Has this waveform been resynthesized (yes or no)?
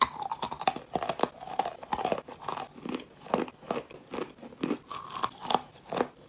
no